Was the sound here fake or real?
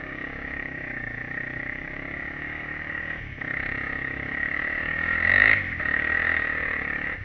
fake